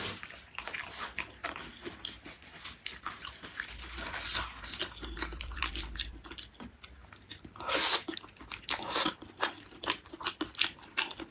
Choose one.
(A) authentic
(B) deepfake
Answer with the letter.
A